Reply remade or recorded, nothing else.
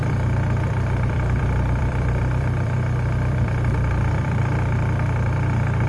remade